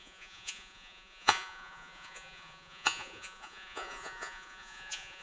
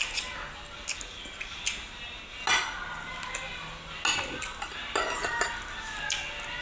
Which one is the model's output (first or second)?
first